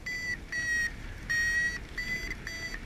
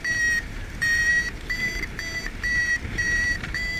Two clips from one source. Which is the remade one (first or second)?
second